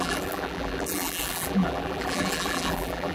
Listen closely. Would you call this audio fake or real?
fake